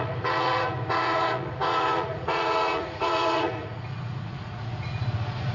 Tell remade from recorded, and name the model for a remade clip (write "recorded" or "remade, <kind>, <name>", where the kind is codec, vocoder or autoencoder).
remade, vocoder, Vocos